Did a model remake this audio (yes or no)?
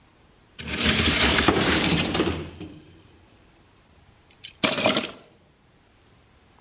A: yes